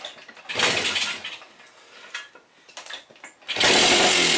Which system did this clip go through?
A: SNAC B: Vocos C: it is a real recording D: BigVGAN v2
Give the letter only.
C